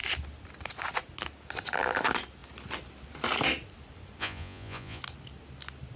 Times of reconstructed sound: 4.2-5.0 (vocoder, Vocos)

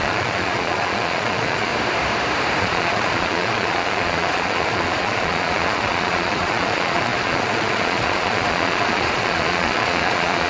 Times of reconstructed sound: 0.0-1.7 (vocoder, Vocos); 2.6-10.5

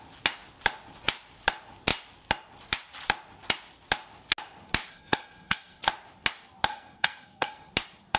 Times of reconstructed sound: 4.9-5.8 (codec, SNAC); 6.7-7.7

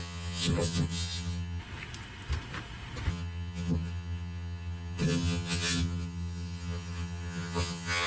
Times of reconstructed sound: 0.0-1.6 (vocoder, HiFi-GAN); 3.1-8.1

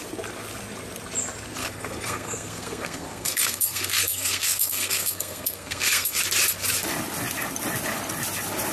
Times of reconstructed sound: 1.6-6.2 (codec, SNAC)